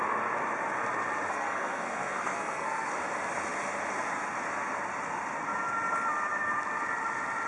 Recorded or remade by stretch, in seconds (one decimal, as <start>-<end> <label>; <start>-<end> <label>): 0.0-1.3 recorded; 1.3-2.9 remade; 2.9-7.5 recorded